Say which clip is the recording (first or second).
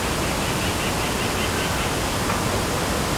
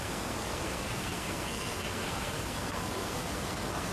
first